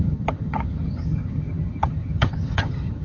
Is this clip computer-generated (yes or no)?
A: yes